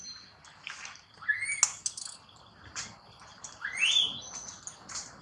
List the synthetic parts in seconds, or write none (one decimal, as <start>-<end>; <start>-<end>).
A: none